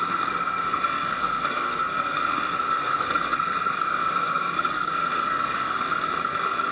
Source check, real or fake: fake